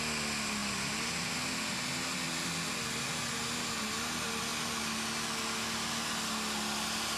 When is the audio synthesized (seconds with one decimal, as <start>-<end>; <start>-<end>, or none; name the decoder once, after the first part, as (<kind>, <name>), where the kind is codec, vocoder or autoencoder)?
none